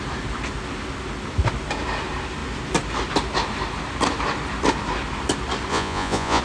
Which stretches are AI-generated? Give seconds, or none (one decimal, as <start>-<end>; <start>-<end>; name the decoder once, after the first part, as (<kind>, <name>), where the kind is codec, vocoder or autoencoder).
5.7-6.4 (vocoder, Vocos)